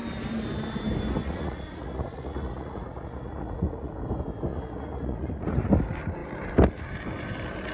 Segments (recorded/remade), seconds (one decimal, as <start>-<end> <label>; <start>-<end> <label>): 0.0-1.2 recorded; 1.2-3.9 remade; 3.9-4.5 recorded; 4.5-5.7 remade; 5.7-7.7 recorded

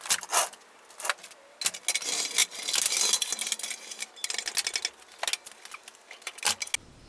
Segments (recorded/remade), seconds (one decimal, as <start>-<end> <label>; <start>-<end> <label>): 0.0-7.1 recorded

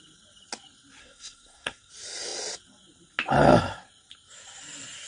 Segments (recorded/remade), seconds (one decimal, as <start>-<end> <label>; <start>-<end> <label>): 0.0-1.0 recorded; 1.0-1.9 remade; 1.9-5.1 recorded

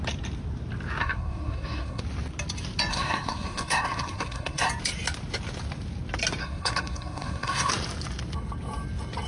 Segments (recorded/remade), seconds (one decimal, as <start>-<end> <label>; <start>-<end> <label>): 0.0-1.0 recorded; 1.0-2.0 remade; 2.0-2.9 recorded; 2.9-4.7 remade; 4.7-6.4 recorded; 6.4-7.7 remade; 7.7-9.3 recorded